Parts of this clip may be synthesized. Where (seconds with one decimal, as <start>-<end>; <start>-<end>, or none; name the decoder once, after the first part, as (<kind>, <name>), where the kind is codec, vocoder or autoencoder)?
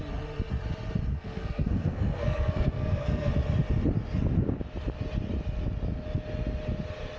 1.1-3.3 (codec, SNAC)